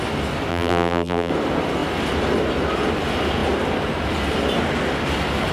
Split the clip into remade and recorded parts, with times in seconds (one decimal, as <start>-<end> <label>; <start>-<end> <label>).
0.0-0.5 recorded; 0.5-1.3 remade; 1.3-5.5 recorded